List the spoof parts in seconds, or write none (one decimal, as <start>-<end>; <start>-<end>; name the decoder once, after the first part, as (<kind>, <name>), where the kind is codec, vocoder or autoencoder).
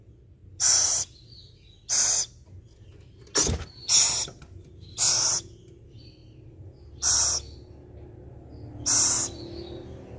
none